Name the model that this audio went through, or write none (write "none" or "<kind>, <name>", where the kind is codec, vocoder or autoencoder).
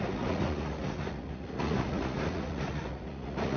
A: vocoder, Vocos